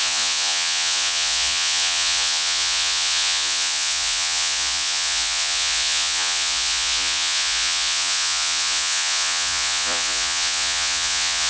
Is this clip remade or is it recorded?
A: remade